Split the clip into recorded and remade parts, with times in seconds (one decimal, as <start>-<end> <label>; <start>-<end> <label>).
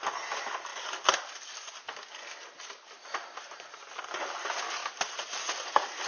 0.0-6.1 recorded